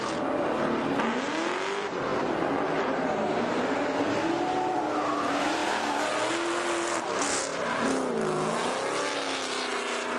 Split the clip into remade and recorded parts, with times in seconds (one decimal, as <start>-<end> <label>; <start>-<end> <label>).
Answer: 0.0-5.6 recorded; 5.6-6.3 remade; 6.3-10.2 recorded